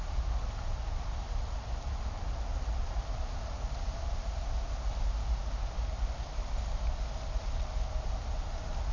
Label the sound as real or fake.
real